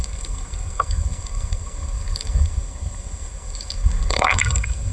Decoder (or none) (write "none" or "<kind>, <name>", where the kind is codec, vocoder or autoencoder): codec, SNAC